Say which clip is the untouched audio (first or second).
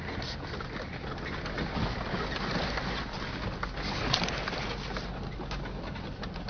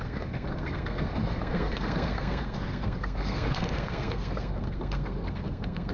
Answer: first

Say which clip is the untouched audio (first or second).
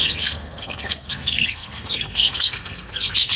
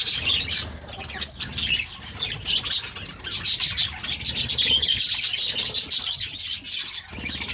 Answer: second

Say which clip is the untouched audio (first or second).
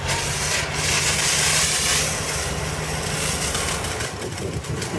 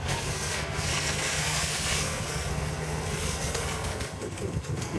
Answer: first